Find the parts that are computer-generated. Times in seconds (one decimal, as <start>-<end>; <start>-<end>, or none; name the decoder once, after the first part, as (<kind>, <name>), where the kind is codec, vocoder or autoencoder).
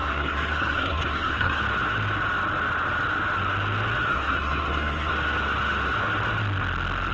0.0-1.6 (codec, SNAC); 4.1-5.1